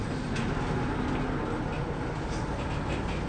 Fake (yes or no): no